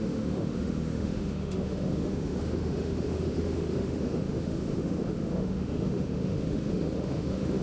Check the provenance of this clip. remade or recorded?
remade